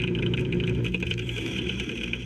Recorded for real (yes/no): no